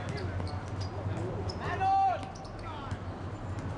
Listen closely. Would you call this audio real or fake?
real